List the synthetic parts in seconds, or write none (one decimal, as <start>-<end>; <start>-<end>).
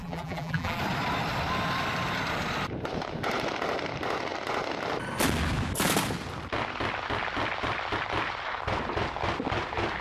0.0-0.8